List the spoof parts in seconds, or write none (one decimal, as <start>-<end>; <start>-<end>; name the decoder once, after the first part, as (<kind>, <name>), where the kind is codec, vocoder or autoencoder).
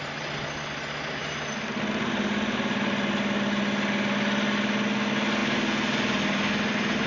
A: none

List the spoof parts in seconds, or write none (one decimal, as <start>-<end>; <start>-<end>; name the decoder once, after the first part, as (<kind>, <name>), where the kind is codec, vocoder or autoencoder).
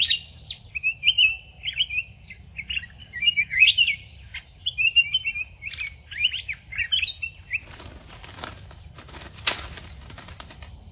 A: 3.0-3.7 (codec, DAC)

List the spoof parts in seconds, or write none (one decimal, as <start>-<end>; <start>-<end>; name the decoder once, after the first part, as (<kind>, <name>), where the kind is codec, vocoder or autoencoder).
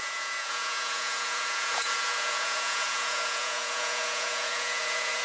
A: 0.0-5.2 (vocoder, Vocos)